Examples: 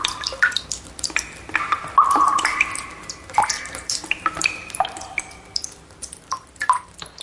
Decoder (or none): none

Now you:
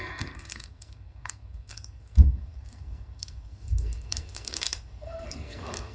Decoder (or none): codec, SNAC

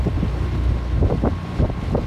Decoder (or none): none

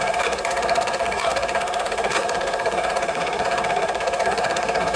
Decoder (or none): codec, SNAC